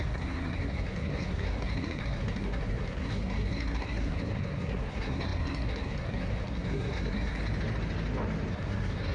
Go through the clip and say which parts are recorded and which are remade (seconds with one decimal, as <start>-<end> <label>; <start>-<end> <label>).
0.0-7.4 remade; 7.4-8.5 recorded; 8.5-9.1 remade